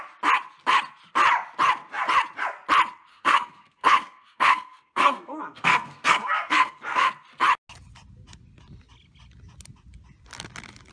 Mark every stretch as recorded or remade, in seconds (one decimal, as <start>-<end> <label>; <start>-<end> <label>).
0.0-3.1 recorded; 3.1-7.1 remade; 7.1-10.9 recorded